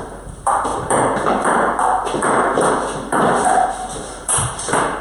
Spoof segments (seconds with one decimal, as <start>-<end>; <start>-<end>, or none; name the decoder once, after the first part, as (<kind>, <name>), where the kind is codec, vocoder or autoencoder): 0.0-5.0 (vocoder, BigVGAN v2)